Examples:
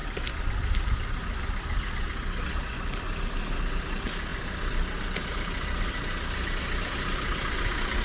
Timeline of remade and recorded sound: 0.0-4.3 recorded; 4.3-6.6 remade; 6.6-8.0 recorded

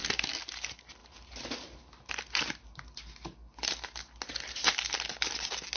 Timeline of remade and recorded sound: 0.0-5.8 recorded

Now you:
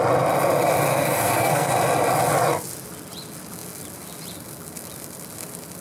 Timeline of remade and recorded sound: 0.0-0.9 recorded; 0.9-1.7 remade; 1.7-5.8 recorded

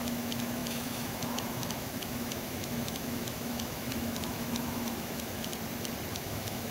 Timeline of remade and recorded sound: 0.0-5.5 remade; 5.5-6.1 recorded; 6.1-6.7 remade

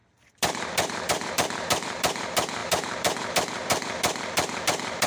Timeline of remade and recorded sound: 0.0-5.1 remade